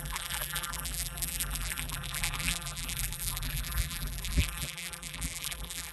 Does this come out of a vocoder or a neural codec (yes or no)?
yes